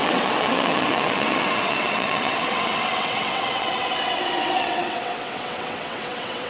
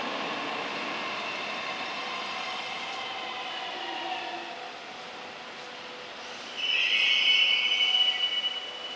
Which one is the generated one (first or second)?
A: first